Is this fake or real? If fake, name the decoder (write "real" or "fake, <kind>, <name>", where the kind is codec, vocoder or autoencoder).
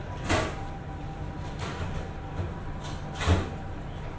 real